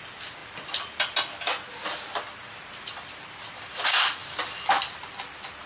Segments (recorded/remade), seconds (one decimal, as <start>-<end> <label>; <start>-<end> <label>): 0.0-5.7 recorded